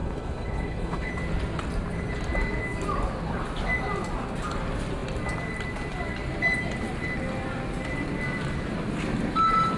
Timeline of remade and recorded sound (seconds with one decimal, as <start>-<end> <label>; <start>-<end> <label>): 0.0-1.1 remade; 1.1-9.8 recorded

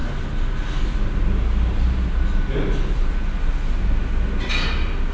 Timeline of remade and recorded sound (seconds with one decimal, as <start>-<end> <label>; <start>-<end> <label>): 0.0-5.1 recorded

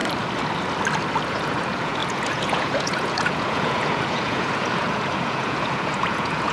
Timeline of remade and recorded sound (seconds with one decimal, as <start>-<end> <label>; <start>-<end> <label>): 0.0-1.3 recorded; 1.3-6.5 remade

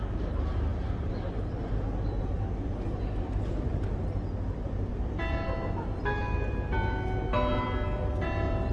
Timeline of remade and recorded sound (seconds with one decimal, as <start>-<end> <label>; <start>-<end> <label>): 0.0-8.7 recorded